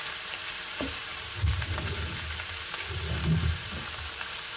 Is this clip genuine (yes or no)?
no